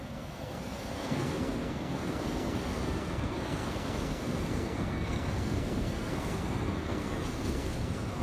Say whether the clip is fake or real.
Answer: fake